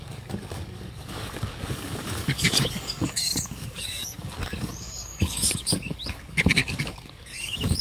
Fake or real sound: fake